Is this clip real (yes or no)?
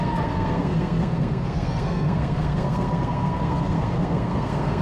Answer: no